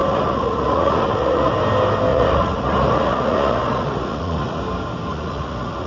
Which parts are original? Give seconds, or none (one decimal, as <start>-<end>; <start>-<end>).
1.5-2.1; 4.6-5.1